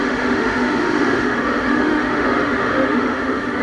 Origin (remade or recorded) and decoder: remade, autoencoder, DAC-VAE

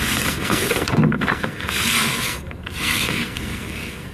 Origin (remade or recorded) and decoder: remade, codec, SNAC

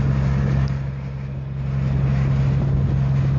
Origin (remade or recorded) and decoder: recorded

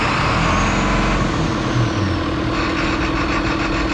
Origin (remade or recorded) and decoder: recorded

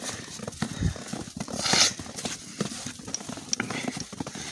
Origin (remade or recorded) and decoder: recorded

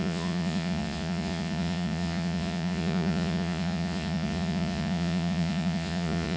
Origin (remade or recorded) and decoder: remade, vocoder, Vocos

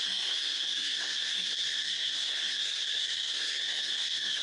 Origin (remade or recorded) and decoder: remade, codec, SNAC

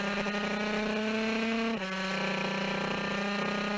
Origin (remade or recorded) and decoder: recorded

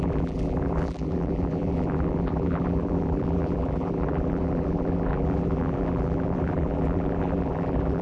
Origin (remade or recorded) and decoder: remade, vocoder, BigVGAN v2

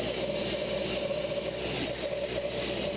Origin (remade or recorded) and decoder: recorded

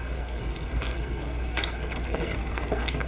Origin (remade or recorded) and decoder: remade, codec, SNAC